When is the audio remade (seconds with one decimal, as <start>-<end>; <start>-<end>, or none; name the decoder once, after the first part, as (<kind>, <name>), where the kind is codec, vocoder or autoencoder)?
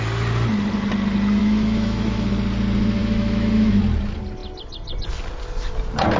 1.4-2.3 (autoencoder, DAC-VAE); 3.0-3.8